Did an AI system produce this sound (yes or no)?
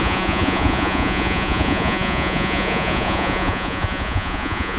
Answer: yes